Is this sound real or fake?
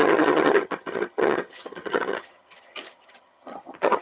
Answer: fake